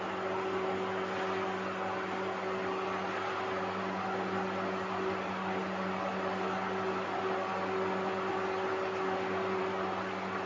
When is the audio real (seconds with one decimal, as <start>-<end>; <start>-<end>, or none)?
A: 0.0-10.5